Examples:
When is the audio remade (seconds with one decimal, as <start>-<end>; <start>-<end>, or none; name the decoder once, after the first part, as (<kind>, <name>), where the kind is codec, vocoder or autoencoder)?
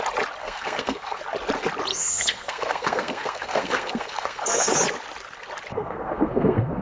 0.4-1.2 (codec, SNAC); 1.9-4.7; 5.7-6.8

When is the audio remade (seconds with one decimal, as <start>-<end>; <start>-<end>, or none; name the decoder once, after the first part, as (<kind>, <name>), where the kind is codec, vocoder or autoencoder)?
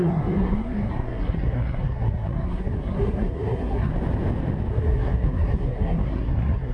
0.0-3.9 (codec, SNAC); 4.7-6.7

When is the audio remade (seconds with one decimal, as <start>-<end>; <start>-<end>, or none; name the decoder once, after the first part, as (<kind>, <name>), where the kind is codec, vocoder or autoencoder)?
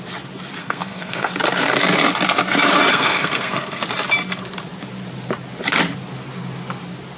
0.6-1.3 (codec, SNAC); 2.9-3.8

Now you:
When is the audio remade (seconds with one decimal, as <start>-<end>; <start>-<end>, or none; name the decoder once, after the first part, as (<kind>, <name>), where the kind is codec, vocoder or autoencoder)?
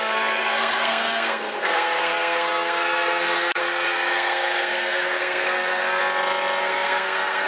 0.0-6.0 (codec, SNAC); 6.6-7.5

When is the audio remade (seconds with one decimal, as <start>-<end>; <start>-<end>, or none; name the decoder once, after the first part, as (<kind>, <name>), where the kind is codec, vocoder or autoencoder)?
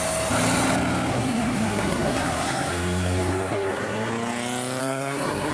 1.1-4.1 (codec, SNAC); 4.8-5.5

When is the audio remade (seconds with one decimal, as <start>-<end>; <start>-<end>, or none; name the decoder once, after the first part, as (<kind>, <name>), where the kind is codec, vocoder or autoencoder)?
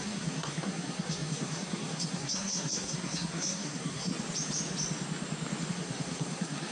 0.0-4.1 (codec, SNAC); 5.7-6.7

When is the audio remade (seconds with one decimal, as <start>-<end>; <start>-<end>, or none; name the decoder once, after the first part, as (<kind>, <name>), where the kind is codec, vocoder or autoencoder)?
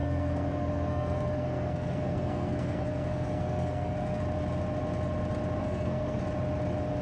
0.0-4.2 (codec, SNAC); 5.6-6.2